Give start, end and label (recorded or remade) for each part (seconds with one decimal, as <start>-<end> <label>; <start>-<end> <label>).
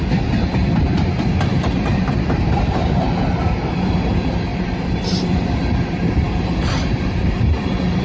0.0-1.5 recorded; 1.5-3.0 remade; 3.0-4.5 recorded; 4.5-8.0 remade